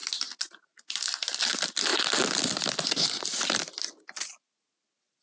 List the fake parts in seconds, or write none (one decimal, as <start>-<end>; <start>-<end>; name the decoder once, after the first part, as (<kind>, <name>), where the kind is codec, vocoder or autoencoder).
none

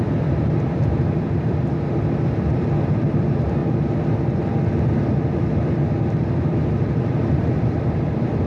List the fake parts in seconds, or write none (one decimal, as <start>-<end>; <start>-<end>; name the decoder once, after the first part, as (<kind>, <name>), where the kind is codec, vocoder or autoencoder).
0.0-3.6 (vocoder, BigVGAN v2); 6.4-8.5

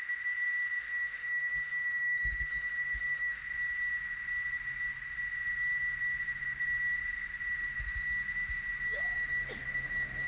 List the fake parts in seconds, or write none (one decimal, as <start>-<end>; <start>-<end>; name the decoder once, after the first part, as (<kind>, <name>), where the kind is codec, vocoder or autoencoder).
0.8-3.4 (autoencoder, DAC-VAE)

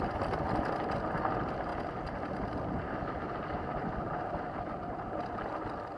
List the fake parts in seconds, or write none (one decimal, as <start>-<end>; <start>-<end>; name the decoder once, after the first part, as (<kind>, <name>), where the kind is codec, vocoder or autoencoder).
1.7-5.1 (vocoder, BigVGAN v2)

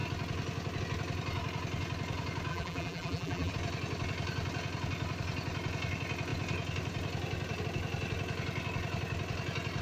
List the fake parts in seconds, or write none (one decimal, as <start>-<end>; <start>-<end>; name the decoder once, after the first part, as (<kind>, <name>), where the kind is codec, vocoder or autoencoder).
2.5-3.5 (vocoder, BigVGAN v2)

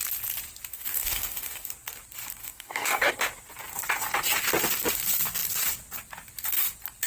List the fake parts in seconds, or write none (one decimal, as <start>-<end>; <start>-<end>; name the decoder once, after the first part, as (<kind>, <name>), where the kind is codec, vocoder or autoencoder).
0.7-1.7 (codec, DAC); 2.4-3.1